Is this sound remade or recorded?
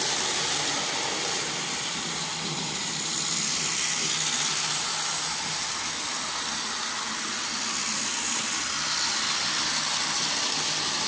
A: recorded